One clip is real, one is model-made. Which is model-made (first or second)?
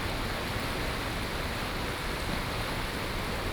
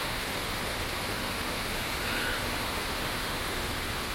second